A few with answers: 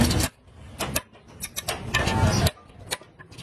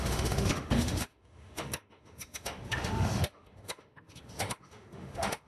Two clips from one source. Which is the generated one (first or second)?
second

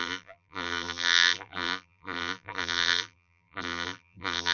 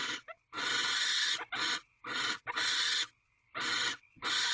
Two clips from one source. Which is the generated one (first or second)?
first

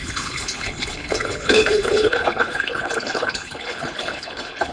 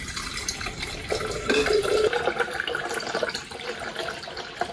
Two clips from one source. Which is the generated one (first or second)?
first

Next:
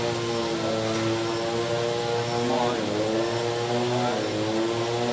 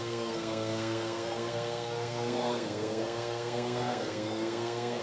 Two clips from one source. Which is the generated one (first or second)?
second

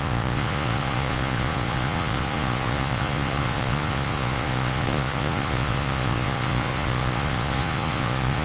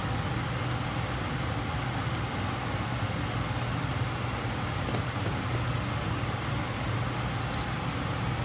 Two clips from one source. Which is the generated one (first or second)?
first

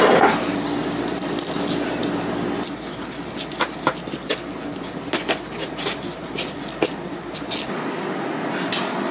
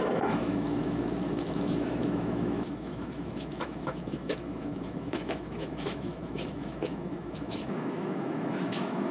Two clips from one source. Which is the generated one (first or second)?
second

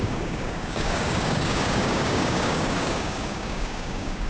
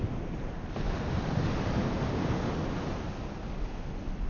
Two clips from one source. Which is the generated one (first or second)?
first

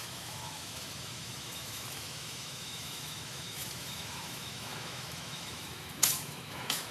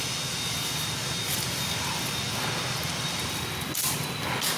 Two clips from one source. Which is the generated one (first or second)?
first